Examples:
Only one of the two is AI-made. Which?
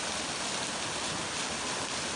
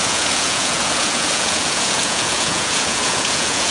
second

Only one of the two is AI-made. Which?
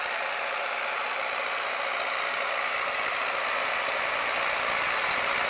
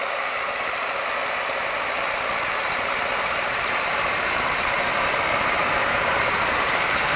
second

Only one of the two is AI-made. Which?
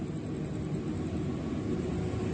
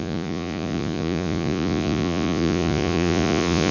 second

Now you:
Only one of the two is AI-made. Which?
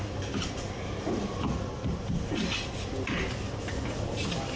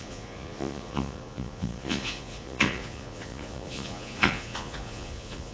second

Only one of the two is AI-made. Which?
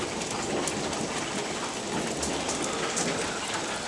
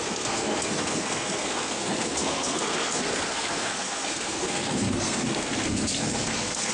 second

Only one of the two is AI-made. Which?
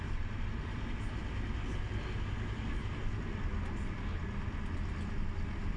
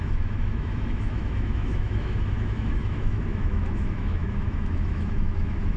second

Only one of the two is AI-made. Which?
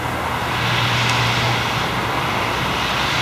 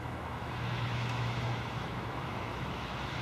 second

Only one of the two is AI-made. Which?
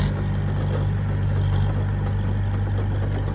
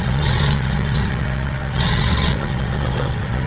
second